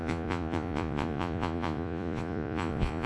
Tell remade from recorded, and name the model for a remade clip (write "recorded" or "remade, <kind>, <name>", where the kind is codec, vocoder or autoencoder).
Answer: remade, vocoder, Vocos